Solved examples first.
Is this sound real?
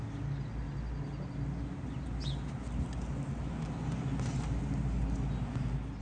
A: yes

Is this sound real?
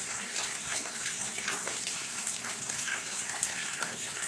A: no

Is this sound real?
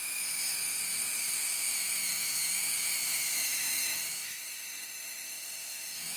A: no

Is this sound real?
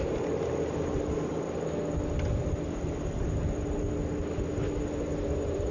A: yes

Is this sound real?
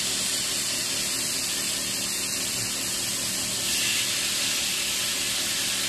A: yes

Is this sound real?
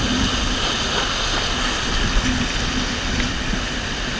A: yes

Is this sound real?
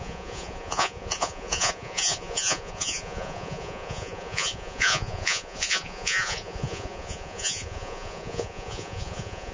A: no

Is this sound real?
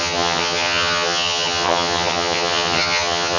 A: no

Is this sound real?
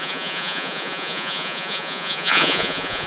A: no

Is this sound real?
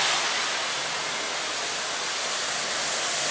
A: yes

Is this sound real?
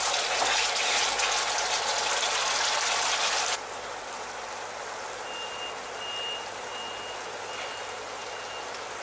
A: yes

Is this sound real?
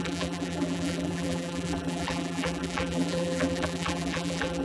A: no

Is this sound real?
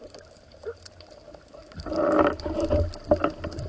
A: yes